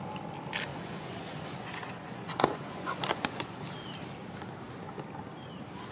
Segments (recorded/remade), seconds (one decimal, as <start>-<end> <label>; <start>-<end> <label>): 0.0-0.7 recorded; 0.7-3.6 remade; 3.6-5.9 recorded